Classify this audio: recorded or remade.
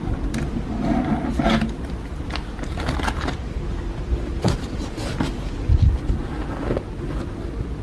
recorded